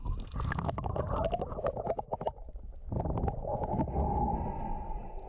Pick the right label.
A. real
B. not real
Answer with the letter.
A